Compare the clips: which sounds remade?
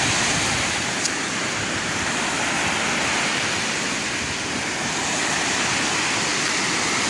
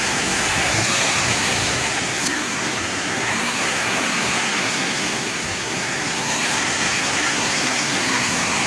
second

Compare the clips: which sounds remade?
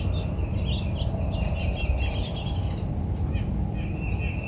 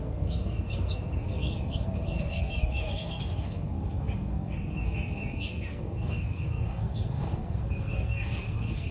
second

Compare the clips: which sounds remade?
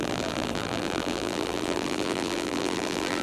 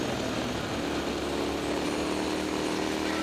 first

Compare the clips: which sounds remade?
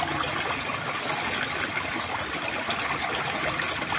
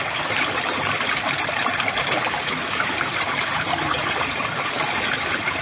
second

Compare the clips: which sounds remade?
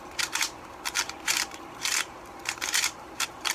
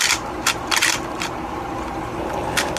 first